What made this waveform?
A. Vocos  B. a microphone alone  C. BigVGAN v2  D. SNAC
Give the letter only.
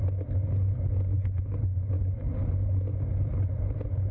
B